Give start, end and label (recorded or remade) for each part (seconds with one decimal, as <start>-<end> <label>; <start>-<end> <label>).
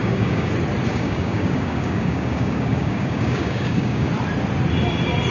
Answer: 0.0-0.5 remade; 0.5-0.9 recorded; 0.9-4.1 remade; 4.1-5.3 recorded